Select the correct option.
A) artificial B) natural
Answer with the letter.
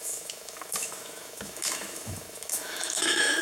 A